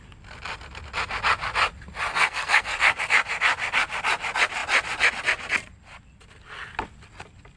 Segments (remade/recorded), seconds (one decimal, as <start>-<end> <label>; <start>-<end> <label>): 0.0-2.1 recorded; 2.1-3.0 remade; 3.0-7.6 recorded